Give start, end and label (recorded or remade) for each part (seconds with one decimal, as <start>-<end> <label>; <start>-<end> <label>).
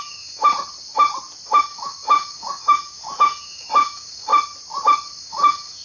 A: 0.0-0.4 remade; 0.4-1.6 recorded; 1.6-4.3 remade; 4.3-5.2 recorded; 5.2-5.8 remade